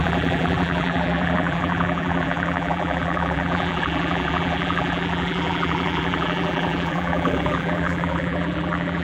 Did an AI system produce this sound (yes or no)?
yes